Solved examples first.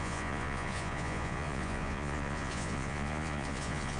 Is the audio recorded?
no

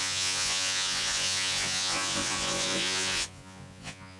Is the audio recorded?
no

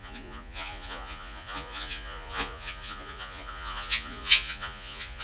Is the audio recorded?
no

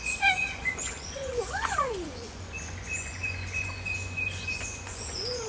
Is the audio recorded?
no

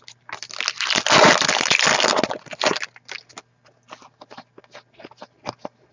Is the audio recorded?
yes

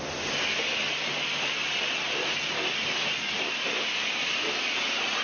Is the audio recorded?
yes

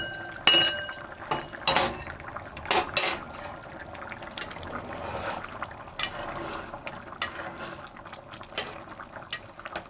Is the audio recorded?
yes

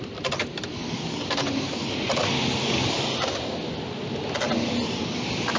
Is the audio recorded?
yes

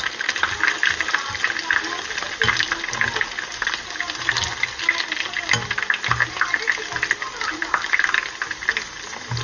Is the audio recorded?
yes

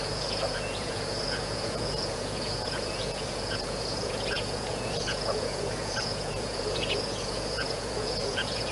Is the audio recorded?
no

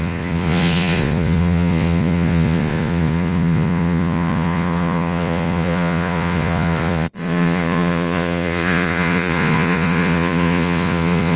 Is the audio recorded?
no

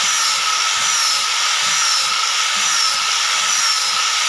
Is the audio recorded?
yes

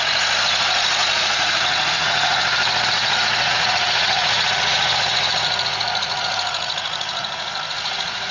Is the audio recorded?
no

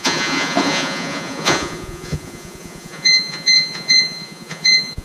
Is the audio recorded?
no